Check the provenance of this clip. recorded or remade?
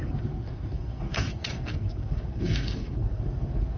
remade